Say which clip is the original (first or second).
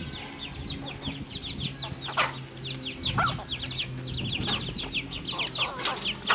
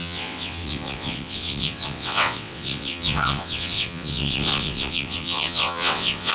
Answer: first